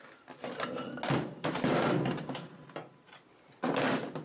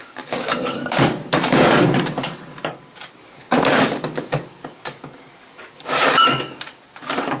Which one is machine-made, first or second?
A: second